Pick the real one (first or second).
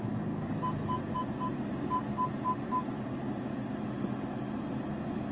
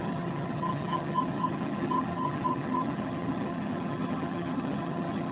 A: first